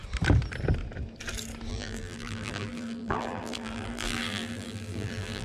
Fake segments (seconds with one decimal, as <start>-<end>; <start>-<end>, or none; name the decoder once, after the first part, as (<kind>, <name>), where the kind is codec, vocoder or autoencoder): 1.7-5.4 (vocoder, BigVGAN v2)